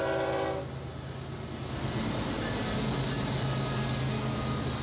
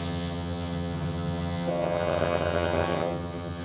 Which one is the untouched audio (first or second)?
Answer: first